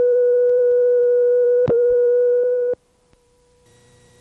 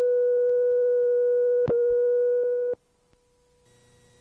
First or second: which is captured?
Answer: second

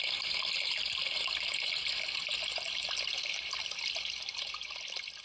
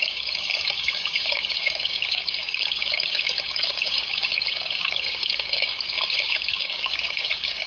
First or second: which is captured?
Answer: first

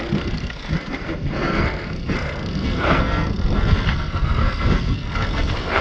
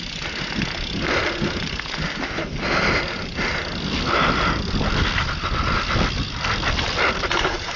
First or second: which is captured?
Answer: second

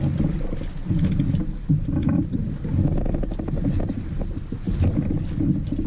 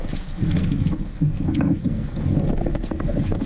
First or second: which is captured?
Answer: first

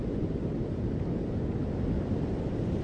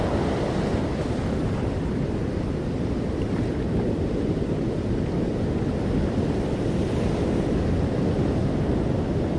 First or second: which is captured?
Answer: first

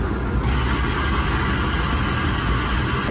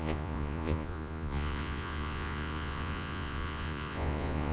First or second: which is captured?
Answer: first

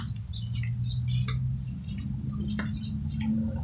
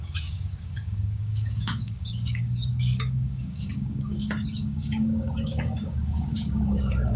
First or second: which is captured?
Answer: first